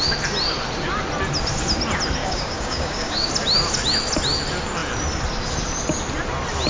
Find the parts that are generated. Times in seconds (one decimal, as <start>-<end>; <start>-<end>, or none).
2.2-3.3